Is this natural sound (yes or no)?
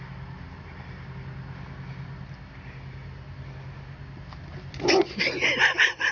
yes